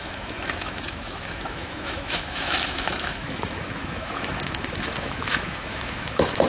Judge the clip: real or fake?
fake